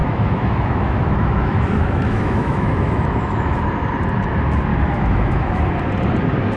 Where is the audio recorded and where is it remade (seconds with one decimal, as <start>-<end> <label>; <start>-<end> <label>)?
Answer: 0.0-3.6 remade; 3.6-4.7 recorded; 4.7-5.6 remade; 5.6-6.6 recorded